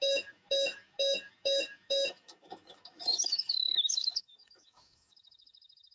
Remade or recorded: remade